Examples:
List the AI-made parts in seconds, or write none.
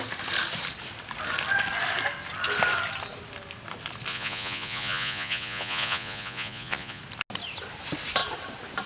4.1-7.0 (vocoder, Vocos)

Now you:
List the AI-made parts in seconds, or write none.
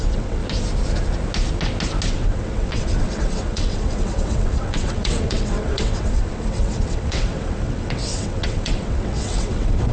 0.0-0.4 (vocoder, WaveNeXt); 2.1-9.9